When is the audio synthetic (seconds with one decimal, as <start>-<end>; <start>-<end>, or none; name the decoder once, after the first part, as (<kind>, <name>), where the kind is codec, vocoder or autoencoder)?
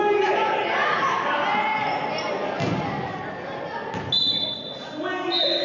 none